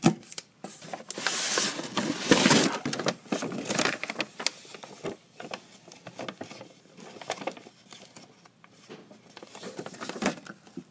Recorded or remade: recorded